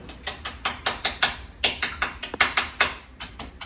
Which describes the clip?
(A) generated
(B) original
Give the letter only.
B